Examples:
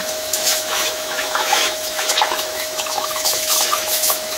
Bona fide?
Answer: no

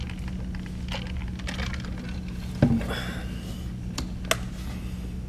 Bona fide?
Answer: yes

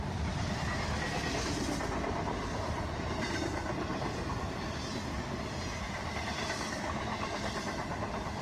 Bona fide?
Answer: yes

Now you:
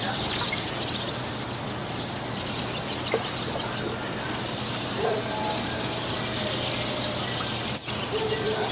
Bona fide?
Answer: yes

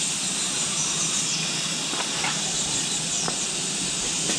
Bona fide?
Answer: yes